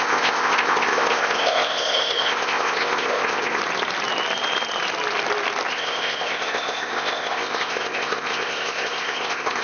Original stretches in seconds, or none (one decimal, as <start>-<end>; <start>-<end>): 3.6-5.7